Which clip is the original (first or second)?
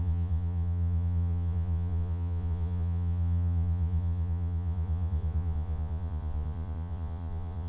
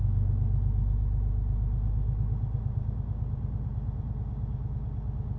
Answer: second